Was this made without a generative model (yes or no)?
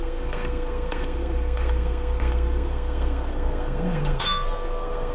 no